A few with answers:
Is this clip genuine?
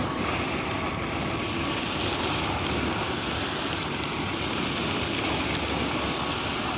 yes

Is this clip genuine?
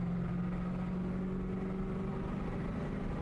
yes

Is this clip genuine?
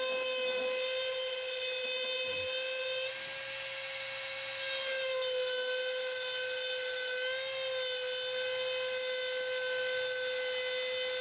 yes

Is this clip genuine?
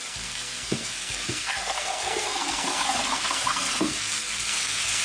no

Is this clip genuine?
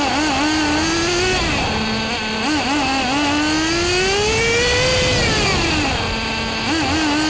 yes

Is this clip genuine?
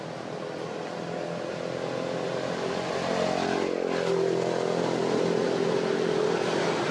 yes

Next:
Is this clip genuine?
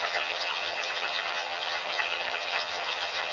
no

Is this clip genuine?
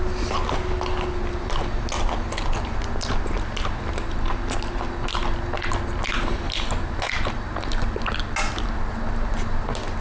yes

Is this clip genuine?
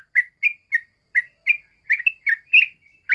yes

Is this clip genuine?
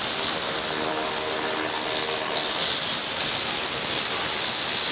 yes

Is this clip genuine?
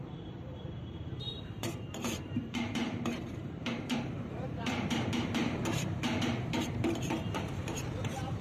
no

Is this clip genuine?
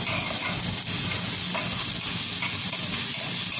yes